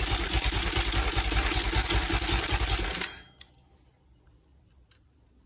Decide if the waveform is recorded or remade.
recorded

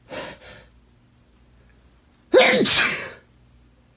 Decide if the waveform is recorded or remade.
recorded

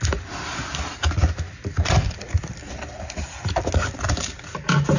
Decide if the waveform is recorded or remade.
recorded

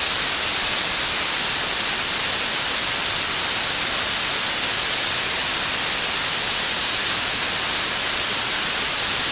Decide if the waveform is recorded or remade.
recorded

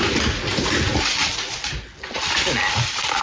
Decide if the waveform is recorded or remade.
recorded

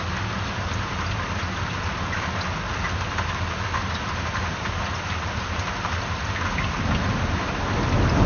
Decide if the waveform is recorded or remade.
recorded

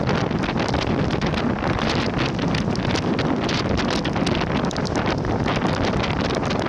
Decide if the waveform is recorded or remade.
recorded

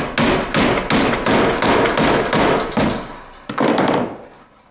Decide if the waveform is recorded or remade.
recorded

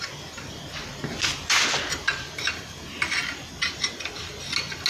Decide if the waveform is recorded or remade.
recorded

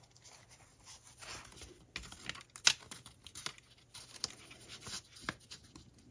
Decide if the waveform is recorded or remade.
recorded